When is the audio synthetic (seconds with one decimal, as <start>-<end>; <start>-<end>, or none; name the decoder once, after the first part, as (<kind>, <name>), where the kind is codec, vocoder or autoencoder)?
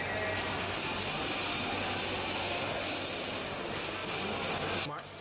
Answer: none